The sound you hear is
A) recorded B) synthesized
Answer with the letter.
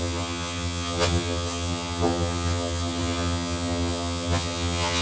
B